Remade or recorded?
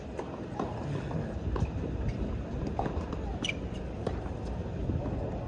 recorded